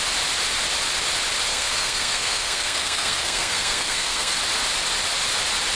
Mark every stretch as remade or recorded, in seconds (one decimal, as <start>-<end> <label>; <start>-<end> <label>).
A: 0.0-1.5 recorded; 1.5-4.4 remade; 4.4-5.7 recorded